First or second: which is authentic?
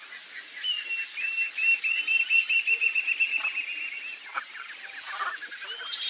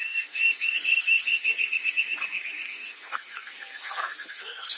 first